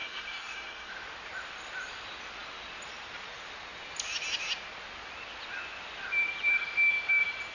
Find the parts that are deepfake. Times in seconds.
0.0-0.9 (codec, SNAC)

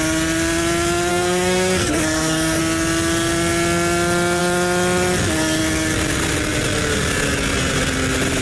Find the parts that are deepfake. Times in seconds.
1.1-2.6 (codec, SNAC)

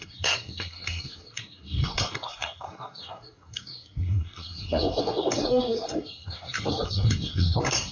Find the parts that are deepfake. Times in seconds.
0.0-7.9 (codec, SNAC)